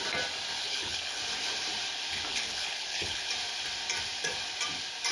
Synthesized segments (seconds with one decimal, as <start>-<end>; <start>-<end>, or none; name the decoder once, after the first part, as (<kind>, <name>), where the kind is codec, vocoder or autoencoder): 0.6-1.2 (codec, HILCodec); 2.3-3.3